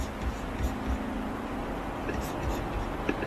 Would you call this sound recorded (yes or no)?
yes